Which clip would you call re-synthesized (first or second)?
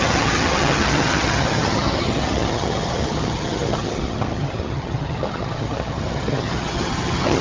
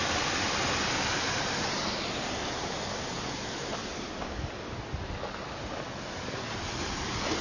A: first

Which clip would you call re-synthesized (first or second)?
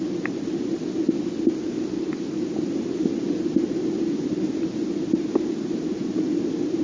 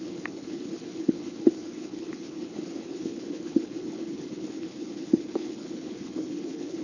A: second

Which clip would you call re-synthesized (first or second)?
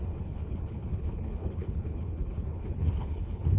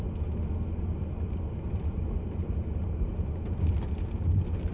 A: first